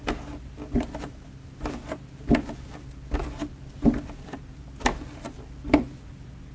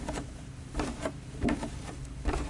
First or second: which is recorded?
first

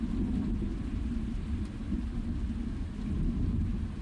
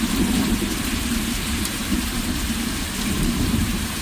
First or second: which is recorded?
first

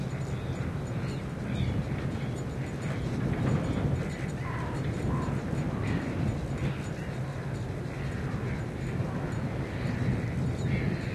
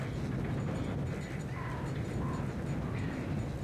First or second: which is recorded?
second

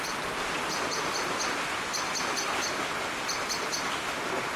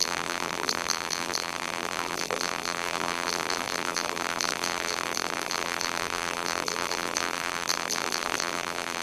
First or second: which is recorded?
first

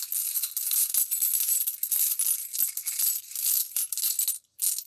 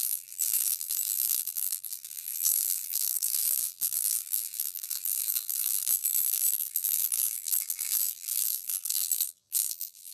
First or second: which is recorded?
first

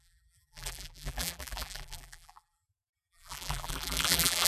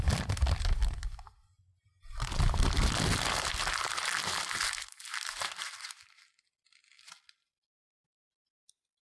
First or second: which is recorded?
second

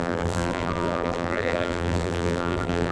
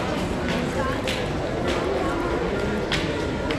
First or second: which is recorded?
second